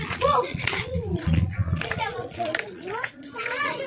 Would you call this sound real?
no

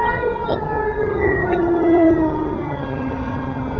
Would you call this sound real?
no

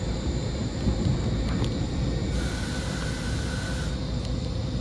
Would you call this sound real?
yes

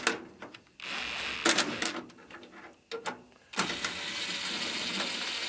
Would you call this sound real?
yes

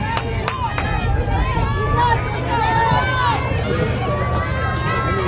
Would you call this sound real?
yes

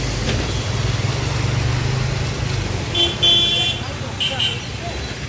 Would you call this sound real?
yes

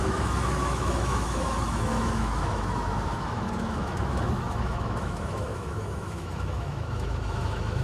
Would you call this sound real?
no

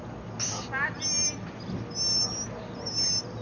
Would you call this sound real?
yes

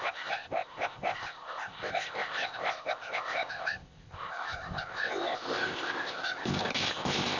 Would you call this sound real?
no